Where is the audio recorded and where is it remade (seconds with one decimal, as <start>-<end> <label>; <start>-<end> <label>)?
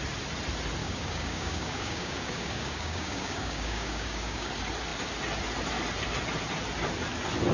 0.0-0.8 recorded; 0.8-4.5 remade; 4.5-7.5 recorded